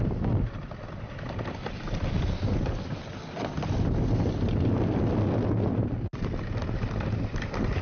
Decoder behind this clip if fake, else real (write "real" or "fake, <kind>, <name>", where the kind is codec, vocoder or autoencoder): real